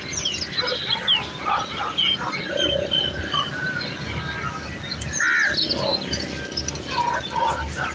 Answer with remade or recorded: recorded